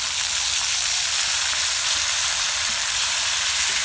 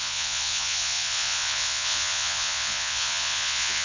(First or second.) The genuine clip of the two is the first